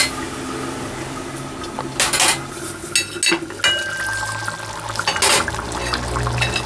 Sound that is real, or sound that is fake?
real